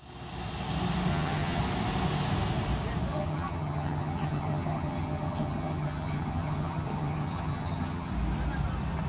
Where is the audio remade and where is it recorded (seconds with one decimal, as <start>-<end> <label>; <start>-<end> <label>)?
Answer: 0.0-1.1 recorded; 1.1-1.6 remade; 1.6-3.1 recorded; 3.1-8.1 remade; 8.1-9.1 recorded